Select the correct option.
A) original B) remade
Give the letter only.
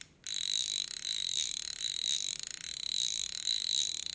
A